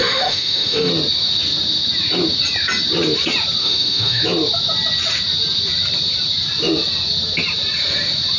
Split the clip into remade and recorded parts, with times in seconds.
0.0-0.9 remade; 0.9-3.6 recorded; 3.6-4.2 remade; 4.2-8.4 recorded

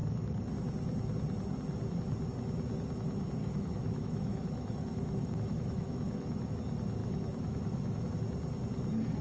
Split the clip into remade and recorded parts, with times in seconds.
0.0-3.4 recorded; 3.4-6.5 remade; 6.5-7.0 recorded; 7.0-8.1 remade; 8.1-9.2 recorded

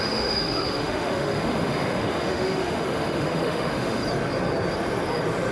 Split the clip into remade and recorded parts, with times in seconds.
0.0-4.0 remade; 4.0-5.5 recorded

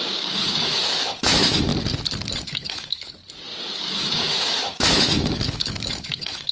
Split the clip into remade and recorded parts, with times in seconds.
0.0-1.7 remade; 1.7-2.4 recorded; 2.4-3.2 remade; 3.2-3.7 recorded; 3.7-6.5 remade

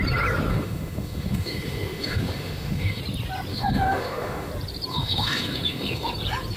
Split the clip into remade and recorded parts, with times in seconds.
0.0-0.5 recorded; 0.5-3.0 remade; 3.0-3.5 recorded; 3.5-4.5 remade; 4.5-4.9 recorded; 4.9-6.1 remade; 6.1-6.6 recorded

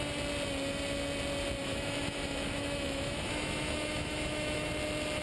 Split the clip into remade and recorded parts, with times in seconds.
0.0-1.6 recorded; 1.6-4.7 remade; 4.7-5.2 recorded

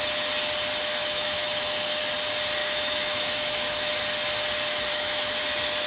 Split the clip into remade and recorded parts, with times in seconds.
0.0-1.0 recorded; 1.0-2.0 remade; 2.0-2.6 recorded; 2.6-3.9 remade; 3.9-4.9 recorded; 4.9-5.4 remade; 5.4-5.9 recorded